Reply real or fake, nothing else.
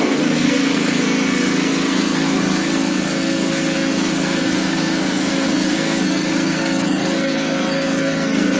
fake